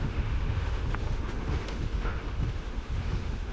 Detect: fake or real fake